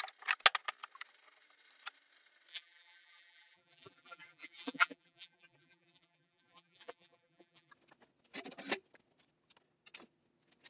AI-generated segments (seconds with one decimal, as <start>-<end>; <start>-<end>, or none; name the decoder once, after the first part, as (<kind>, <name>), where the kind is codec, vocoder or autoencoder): 2.5-7.7 (vocoder, BigVGAN v2)